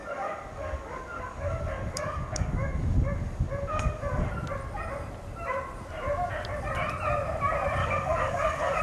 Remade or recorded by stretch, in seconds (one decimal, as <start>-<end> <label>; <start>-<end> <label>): 0.0-4.3 remade; 4.3-7.8 recorded; 7.8-8.8 remade